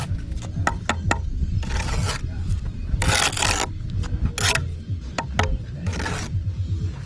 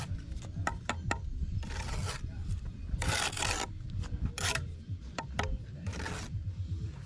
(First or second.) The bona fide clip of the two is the first